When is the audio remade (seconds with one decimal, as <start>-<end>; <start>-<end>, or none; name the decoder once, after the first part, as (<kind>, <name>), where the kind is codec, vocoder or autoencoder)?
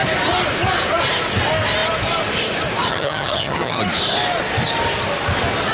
2.9-3.8 (vocoder, HiFi-GAN)